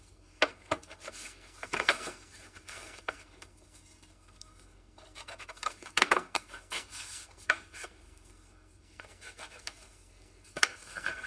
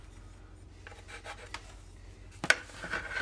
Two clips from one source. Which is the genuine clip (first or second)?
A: second